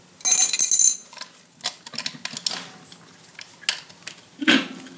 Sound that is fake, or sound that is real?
real